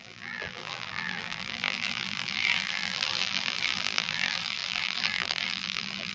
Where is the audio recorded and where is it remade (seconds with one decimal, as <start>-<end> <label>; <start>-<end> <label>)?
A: 0.0-6.1 remade